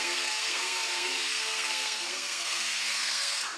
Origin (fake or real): fake